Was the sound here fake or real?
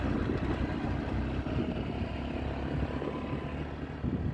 real